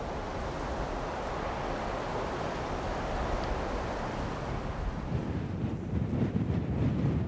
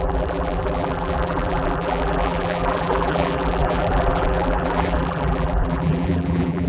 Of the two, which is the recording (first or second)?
first